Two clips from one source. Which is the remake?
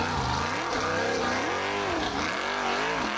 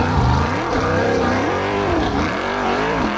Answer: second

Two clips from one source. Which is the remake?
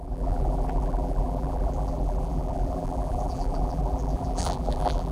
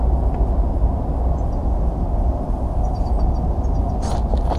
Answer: first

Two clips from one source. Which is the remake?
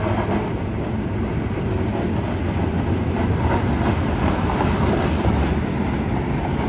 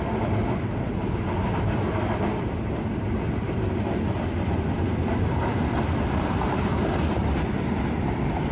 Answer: second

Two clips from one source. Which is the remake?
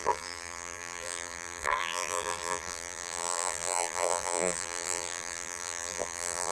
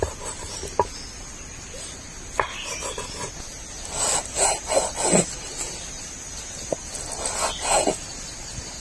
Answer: first